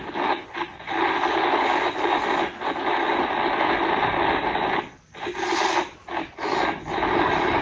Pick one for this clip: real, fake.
real